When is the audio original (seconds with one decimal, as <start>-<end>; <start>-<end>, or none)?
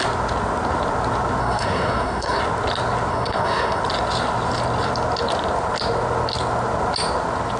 0.0-1.4; 2.4-3.1; 3.8-7.6